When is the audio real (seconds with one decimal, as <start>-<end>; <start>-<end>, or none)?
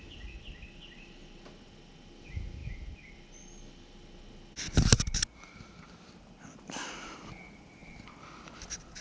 0.0-9.0